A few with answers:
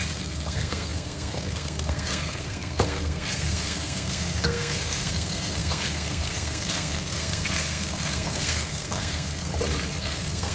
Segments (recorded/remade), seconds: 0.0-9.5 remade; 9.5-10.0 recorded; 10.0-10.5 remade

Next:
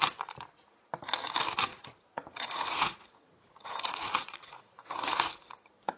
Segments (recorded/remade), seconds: 0.0-1.7 recorded; 1.7-5.3 remade; 5.3-6.0 recorded

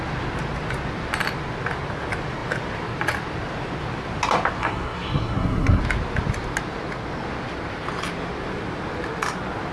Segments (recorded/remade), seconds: 0.0-4.6 recorded; 4.6-5.8 remade; 5.8-9.7 recorded

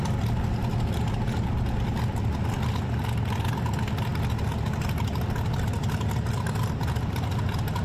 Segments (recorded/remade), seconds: 0.0-7.8 recorded

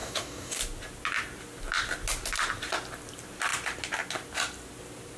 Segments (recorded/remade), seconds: 0.0-0.6 remade; 0.6-5.2 recorded

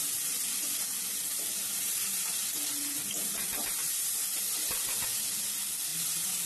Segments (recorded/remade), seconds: 0.0-6.5 recorded